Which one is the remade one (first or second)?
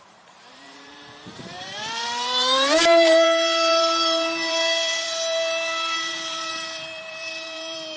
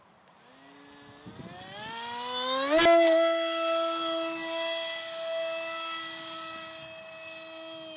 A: first